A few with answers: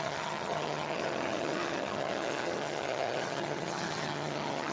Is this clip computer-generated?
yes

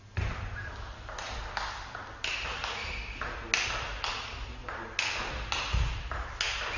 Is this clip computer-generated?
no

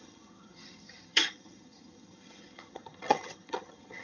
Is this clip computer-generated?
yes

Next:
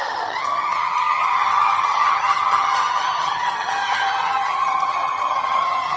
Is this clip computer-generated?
yes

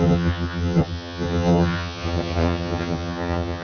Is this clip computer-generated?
yes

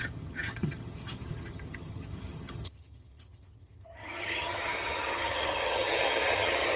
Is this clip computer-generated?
yes